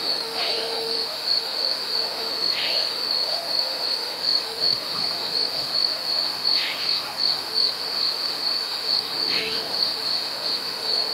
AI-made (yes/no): yes